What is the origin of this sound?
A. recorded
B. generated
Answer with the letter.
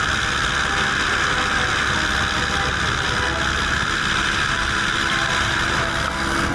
A